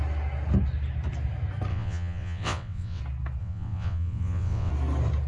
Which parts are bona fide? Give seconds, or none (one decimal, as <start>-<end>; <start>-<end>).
0.0-1.7; 3.0-3.4; 4.7-5.3